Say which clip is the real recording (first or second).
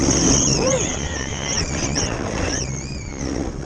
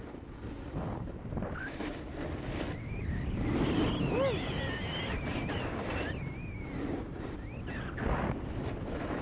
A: second